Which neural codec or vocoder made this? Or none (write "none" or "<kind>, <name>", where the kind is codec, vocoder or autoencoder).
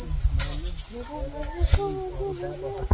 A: none